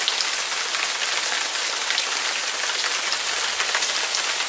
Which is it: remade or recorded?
recorded